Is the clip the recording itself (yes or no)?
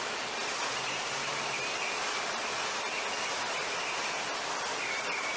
yes